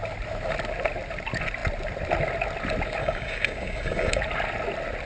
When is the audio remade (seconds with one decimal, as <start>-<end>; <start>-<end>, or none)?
3.0-4.2